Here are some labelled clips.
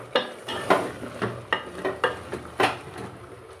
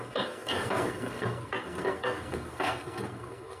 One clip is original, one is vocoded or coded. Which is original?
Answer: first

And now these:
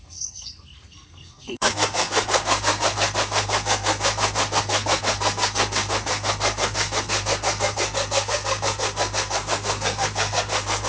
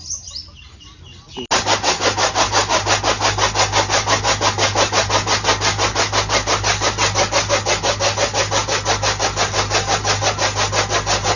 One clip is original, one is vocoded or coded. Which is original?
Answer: second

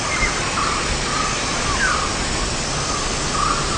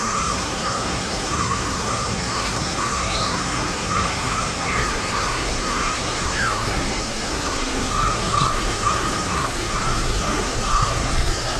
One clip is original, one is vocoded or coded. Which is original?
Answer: first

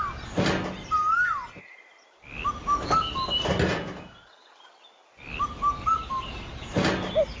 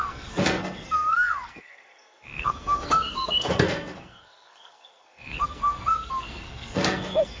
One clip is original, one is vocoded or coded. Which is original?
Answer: first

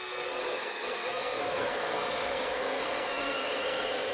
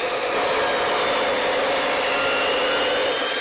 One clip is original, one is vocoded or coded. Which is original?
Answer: second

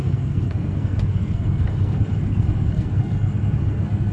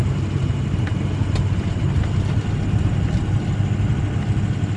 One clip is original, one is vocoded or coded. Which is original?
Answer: second